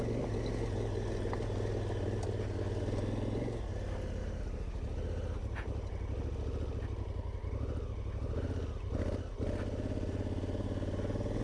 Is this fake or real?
real